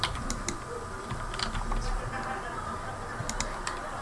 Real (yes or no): yes